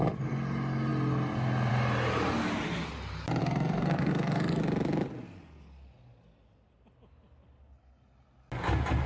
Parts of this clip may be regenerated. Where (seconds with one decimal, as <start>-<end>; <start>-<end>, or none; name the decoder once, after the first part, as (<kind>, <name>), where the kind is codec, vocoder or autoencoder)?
3.4-4.6 (codec, SNAC)